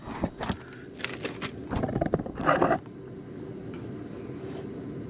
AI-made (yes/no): no